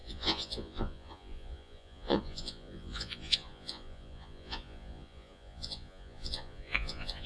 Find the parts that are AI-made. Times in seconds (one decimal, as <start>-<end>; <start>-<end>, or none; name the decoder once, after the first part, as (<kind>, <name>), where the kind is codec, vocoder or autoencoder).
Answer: 0.0-7.3 (vocoder, Vocos)